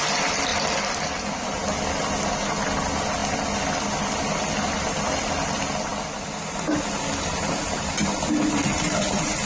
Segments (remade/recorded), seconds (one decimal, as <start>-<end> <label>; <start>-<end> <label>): 0.0-9.5 recorded